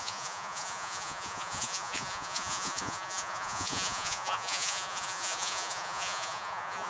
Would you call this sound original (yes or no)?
no